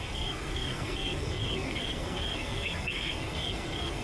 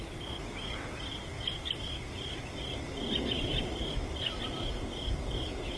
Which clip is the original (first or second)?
second